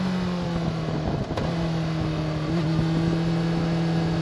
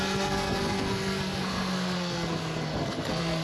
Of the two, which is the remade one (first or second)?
second